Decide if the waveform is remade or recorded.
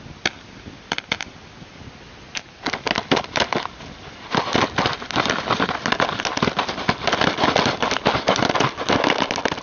recorded